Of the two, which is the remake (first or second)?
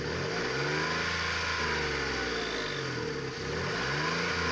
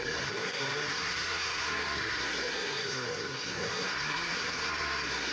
second